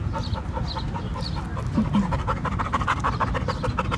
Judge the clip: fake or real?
real